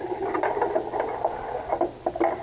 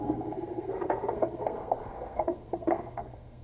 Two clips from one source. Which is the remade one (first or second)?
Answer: second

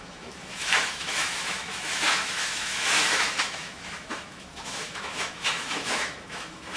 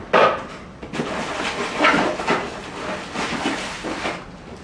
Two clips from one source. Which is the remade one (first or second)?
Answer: first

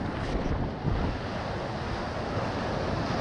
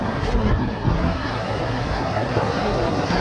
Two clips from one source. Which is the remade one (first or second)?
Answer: second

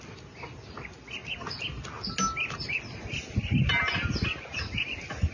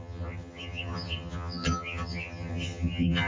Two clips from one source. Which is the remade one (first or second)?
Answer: second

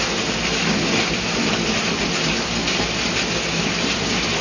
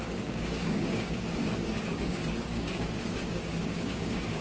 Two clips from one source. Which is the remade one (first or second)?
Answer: second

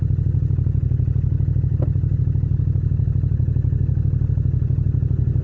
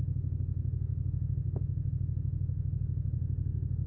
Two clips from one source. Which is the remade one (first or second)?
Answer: second